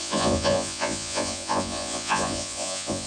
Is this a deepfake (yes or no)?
yes